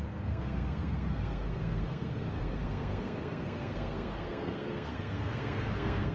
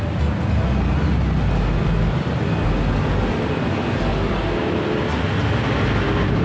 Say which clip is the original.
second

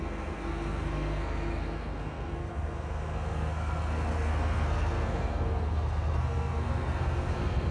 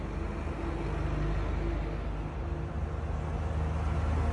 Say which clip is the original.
second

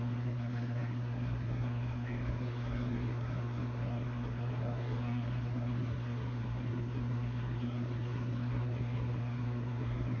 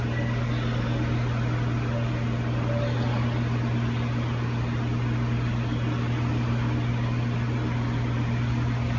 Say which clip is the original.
second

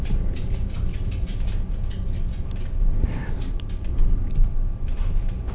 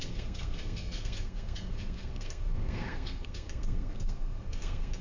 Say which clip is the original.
first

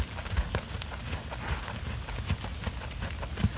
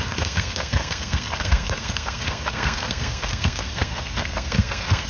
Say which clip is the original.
first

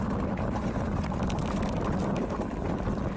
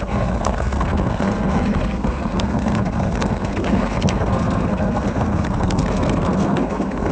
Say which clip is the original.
first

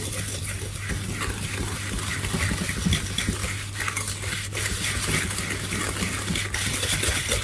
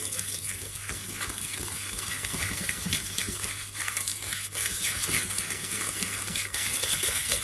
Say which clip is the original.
first